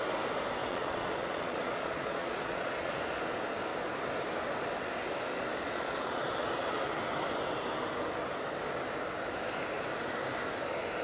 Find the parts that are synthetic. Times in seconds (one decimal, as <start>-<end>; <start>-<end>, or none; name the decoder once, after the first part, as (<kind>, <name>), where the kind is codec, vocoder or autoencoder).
0.6-3.0 (vocoder, Vocos); 5.6-6.9